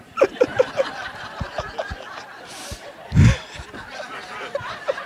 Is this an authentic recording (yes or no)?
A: yes